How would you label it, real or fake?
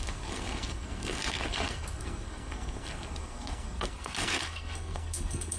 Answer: fake